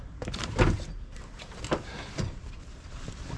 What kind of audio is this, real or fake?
real